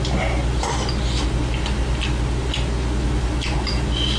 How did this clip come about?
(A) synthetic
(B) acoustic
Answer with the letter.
B